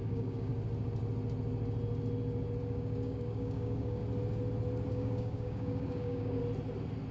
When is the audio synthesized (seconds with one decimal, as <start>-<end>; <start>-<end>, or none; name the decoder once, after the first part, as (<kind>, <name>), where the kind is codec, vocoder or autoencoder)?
0.0-0.5 (codec, DAC); 2.6-4.0; 4.9-6.4